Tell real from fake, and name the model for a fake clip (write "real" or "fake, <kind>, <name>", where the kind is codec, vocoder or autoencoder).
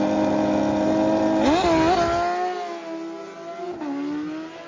real